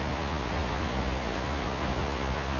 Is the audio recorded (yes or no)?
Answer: no